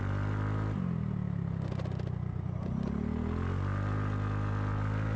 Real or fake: real